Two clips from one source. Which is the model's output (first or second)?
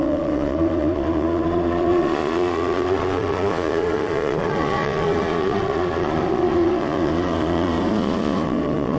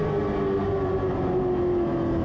first